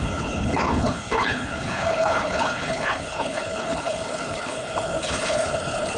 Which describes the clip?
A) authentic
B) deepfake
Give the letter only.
B